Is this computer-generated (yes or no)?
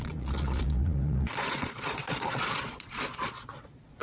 yes